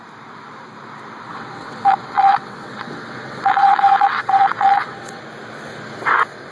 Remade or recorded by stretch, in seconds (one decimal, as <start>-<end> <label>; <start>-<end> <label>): 0.0-1.3 recorded; 1.3-5.2 remade; 5.2-6.5 recorded